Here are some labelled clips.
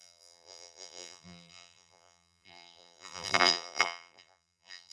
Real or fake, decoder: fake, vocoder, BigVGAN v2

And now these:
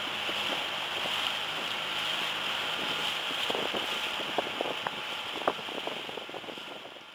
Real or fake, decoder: real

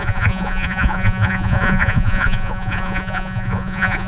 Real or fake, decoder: fake, vocoder, Vocos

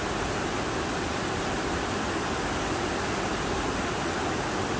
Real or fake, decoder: real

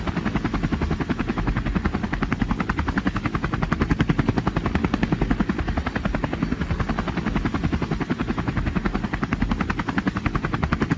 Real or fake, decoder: real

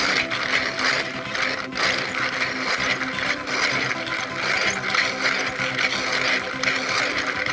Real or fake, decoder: real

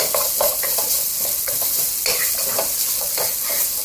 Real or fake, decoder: real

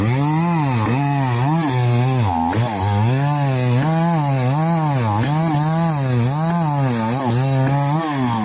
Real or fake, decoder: real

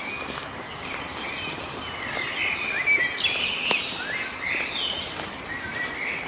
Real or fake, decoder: real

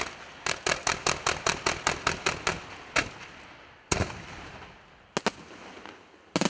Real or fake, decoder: real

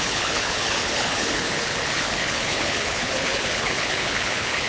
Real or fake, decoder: fake, codec, HILCodec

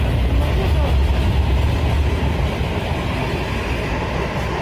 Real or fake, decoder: real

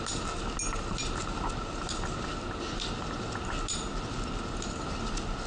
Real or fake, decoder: real